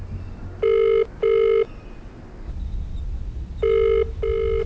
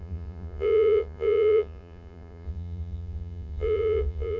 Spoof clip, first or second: second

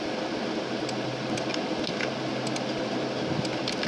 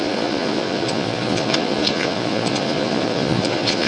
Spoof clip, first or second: second